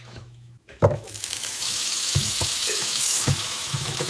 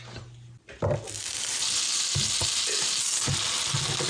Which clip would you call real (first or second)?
second